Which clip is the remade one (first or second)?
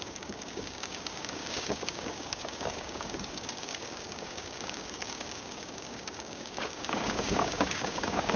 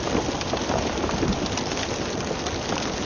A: first